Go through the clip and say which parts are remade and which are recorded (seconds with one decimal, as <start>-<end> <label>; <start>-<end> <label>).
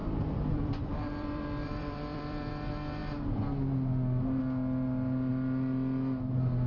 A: 0.0-2.5 remade; 2.5-6.7 recorded